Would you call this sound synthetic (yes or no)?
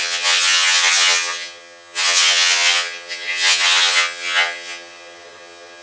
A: yes